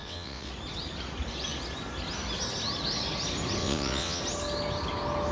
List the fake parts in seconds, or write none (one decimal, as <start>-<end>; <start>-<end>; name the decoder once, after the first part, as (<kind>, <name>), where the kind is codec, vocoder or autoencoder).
0.0-0.5 (vocoder, WaveNeXt); 3.6-4.2